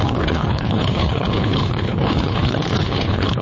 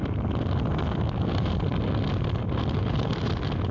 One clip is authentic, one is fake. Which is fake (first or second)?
first